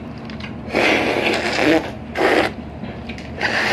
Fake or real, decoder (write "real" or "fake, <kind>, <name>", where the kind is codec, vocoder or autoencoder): real